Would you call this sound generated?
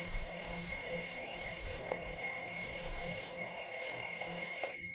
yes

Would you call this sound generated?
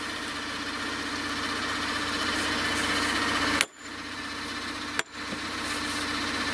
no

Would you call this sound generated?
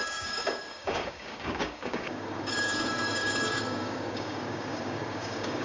yes